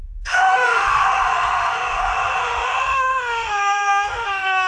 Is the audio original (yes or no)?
no